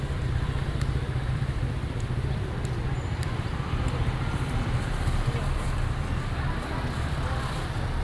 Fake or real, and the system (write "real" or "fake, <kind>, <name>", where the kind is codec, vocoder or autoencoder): fake, vocoder, BigVGAN v2